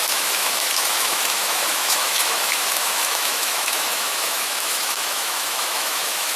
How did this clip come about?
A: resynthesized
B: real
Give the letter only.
A